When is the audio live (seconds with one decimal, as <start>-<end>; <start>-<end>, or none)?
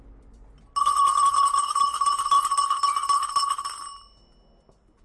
0.0-5.0